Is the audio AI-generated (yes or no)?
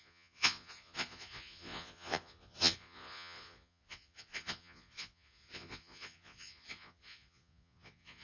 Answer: yes